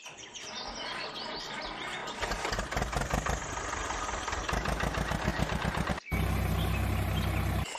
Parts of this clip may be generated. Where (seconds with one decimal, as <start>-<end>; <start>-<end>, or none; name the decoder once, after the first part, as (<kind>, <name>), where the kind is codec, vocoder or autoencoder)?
none